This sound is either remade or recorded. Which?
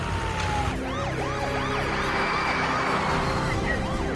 recorded